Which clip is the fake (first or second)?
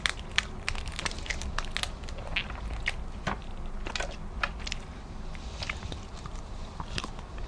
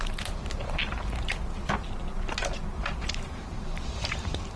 second